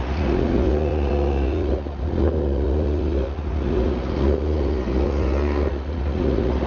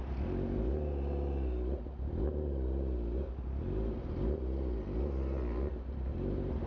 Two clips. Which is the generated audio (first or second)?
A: first